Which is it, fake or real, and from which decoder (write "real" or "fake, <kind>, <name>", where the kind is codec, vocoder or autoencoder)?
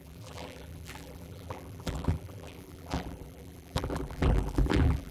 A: fake, vocoder, BigVGAN v2